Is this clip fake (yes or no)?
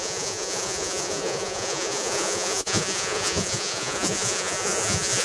yes